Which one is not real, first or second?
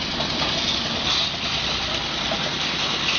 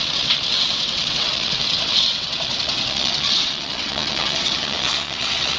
second